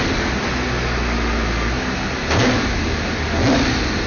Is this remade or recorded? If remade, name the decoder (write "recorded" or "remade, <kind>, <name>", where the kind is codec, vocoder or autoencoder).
recorded